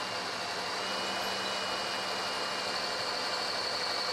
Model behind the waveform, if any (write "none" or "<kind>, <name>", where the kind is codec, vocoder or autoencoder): none